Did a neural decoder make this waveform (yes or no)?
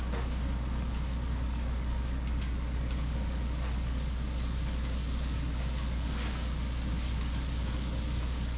yes